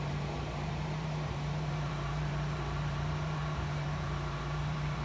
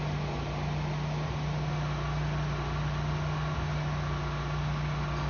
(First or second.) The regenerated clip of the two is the first